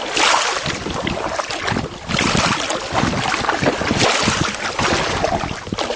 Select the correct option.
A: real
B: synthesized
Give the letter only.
A